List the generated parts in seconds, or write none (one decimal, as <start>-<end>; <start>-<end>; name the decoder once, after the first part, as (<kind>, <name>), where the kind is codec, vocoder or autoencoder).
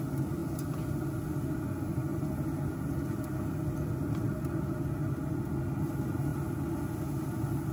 none